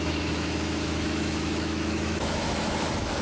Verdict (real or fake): fake